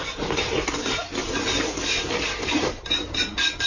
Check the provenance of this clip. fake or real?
real